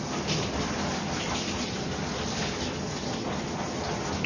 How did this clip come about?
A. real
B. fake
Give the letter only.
B